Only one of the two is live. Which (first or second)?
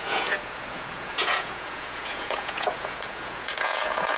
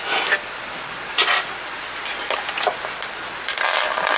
second